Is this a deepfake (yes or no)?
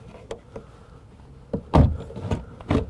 no